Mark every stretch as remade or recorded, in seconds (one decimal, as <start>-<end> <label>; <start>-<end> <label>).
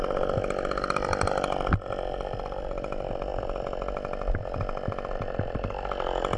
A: 0.0-6.4 recorded